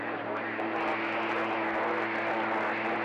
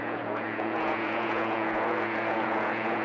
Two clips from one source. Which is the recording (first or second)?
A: first